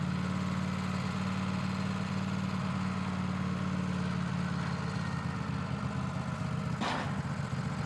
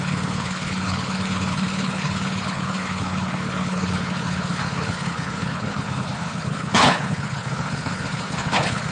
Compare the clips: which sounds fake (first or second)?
second